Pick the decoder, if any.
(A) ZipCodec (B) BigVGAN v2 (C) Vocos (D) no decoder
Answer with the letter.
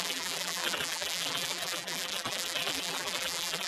B